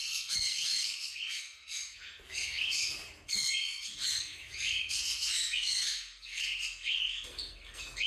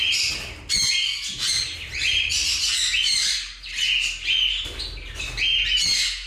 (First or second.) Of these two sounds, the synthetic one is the first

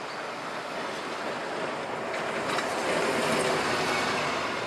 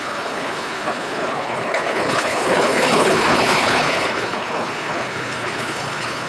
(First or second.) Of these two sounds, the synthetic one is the second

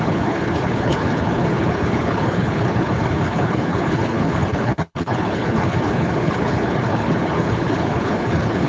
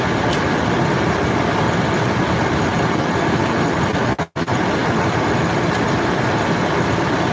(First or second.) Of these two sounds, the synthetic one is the first